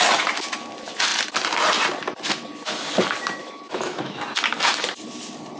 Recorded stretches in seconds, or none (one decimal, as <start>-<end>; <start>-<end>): 0.0-3.4; 4.2-5.6